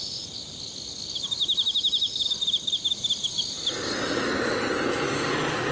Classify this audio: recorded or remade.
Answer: recorded